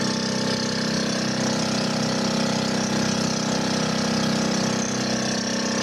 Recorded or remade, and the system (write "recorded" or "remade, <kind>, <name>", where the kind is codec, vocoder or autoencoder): recorded